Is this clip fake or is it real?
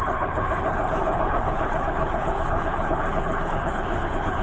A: fake